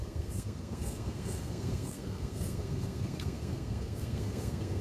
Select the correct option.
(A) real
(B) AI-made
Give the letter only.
B